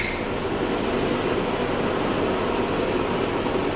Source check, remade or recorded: recorded